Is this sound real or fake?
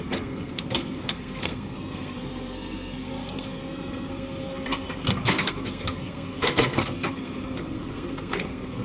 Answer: fake